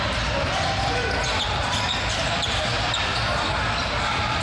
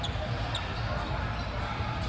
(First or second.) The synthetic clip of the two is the first